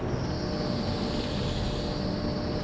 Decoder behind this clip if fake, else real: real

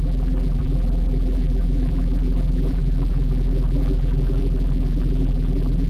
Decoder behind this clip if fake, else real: fake, vocoder, BigVGAN v2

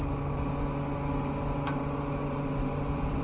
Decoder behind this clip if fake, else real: real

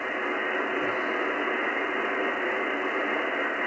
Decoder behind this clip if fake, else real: real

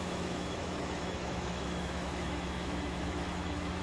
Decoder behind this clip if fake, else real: fake, autoencoder, DAC-VAE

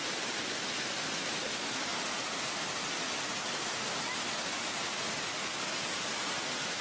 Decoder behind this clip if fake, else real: real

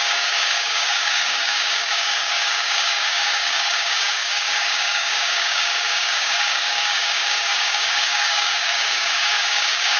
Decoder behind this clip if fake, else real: fake, codec, DAC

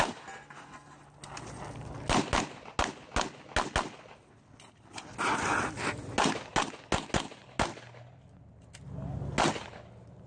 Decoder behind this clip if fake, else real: real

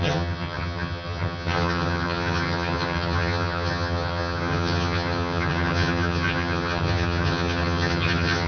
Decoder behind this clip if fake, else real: fake, vocoder, HiFi-GAN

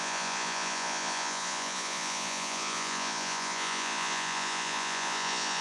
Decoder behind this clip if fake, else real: fake, vocoder, Vocos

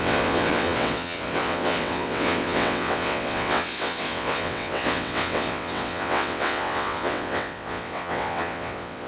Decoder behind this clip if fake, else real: fake, vocoder, WaveNeXt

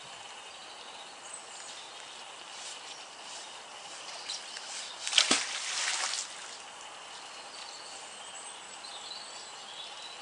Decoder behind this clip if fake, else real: real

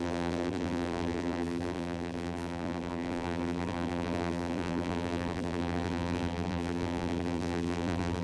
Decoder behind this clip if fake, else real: fake, vocoder, BigVGAN v2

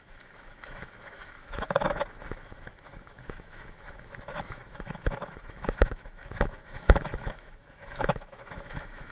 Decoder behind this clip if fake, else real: fake, autoencoder, DAC-VAE